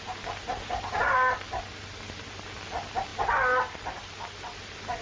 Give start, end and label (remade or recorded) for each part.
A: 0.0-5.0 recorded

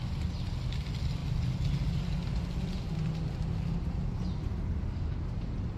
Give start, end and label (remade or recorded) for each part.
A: 0.0-5.8 recorded

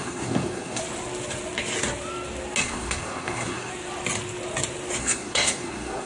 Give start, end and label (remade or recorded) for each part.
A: 0.0-0.8 remade; 0.8-2.6 recorded; 2.6-3.7 remade; 3.7-5.0 recorded; 5.0-6.1 remade